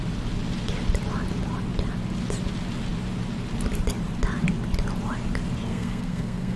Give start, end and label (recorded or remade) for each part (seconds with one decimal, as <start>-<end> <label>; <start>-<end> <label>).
0.0-5.7 recorded; 5.7-6.6 remade